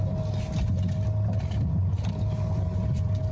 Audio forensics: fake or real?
real